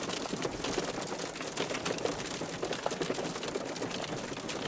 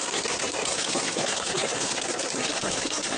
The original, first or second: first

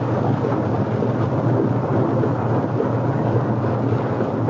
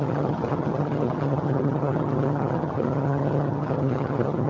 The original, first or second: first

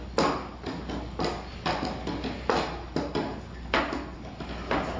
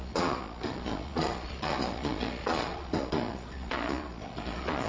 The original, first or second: first